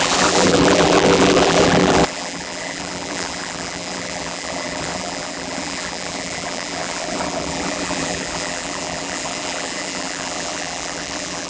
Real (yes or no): no